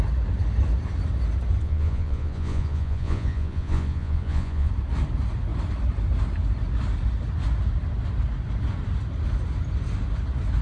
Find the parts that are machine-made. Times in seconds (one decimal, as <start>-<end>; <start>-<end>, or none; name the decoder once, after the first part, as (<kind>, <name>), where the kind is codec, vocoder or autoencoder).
1.6-4.7 (vocoder, Vocos)